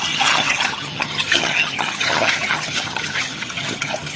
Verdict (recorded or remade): remade